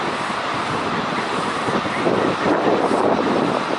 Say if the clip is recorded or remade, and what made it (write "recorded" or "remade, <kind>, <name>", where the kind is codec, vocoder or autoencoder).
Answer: remade, vocoder, BigVGAN v2